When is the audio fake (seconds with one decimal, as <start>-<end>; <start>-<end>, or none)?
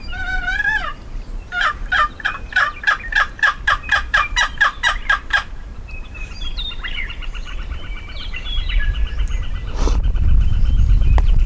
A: 0.0-11.5